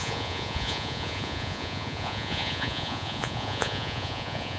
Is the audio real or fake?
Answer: fake